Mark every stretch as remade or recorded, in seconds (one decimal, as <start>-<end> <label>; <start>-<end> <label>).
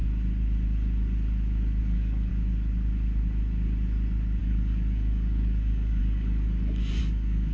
0.0-1.8 recorded; 1.8-2.3 remade; 2.3-4.4 recorded; 4.4-7.5 remade